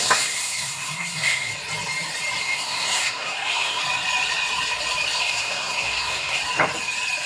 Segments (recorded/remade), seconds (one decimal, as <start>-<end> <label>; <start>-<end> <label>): 0.0-1.5 remade; 1.5-2.4 recorded; 2.4-3.8 remade; 3.8-5.2 recorded; 5.2-6.4 remade; 6.4-7.3 recorded